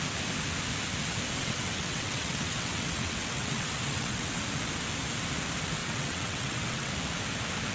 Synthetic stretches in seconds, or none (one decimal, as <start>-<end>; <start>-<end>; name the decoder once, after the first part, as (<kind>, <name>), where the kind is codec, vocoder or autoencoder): 1.4-4.4 (vocoder, WaveNeXt); 5.8-6.9

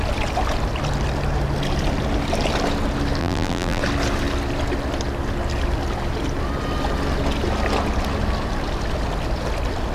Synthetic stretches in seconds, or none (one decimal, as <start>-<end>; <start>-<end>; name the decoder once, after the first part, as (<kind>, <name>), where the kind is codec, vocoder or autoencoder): 3.2-3.8 (vocoder, BigVGAN v2)

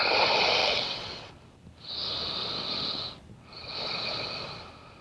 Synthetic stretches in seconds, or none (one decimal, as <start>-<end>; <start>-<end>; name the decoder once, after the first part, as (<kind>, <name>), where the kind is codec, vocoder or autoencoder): 0.6-1.3 (vocoder, WaveNeXt)

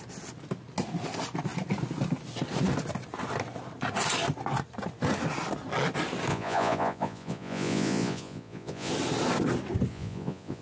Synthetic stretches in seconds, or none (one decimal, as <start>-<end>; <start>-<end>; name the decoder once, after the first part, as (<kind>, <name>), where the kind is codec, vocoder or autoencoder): 6.3-8.9 (vocoder, Vocos); 9.9-10.6

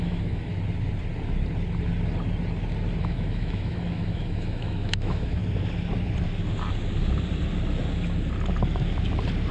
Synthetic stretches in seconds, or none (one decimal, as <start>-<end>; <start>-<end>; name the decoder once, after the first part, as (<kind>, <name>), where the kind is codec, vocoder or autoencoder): 0.0-0.5 (autoencoder, DAC-VAE); 3.0-5.4

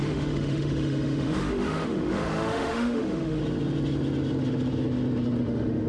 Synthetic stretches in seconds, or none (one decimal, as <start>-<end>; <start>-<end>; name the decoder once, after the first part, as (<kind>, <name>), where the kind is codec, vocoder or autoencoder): 0.0-3.4 (autoencoder, DAC-VAE); 5.4-5.9